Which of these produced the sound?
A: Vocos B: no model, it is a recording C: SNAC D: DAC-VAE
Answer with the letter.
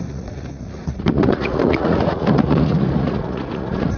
A